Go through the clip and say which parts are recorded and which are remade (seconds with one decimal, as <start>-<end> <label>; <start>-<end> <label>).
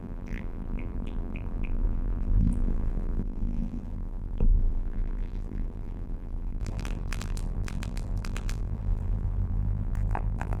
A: 0.0-10.6 remade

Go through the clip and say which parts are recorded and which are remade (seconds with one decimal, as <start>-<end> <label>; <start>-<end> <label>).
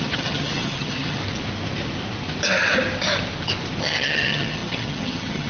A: 0.0-1.2 remade; 1.2-3.8 recorded; 3.8-5.5 remade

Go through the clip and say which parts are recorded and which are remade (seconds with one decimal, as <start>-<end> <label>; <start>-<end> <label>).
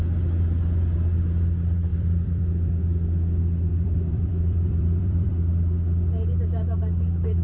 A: 0.0-1.9 recorded; 1.9-2.8 remade; 2.8-3.7 recorded; 3.7-5.3 remade; 5.3-7.4 recorded